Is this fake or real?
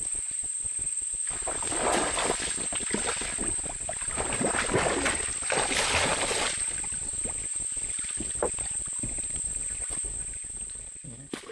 real